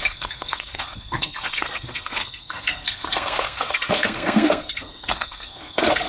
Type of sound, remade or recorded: remade